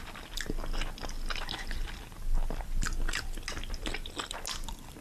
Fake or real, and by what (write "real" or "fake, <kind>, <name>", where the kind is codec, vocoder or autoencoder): real